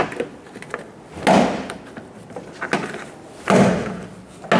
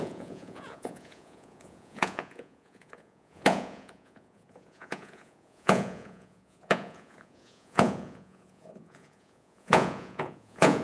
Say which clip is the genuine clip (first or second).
first